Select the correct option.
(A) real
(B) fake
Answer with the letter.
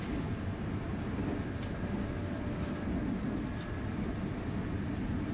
A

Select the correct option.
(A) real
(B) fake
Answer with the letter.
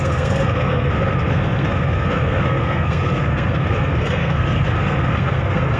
B